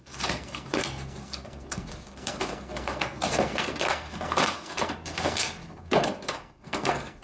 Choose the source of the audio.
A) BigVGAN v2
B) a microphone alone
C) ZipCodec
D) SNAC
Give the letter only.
D